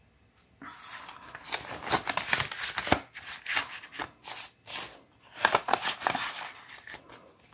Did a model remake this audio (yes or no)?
no